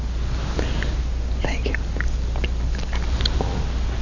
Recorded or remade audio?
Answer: recorded